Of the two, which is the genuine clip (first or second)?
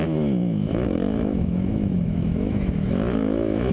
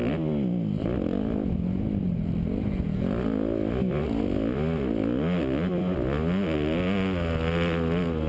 second